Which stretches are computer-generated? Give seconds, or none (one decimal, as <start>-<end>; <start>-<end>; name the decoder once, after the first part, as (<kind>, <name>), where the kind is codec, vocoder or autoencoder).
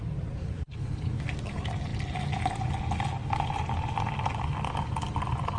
0.4-1.2 (codec, HILCodec)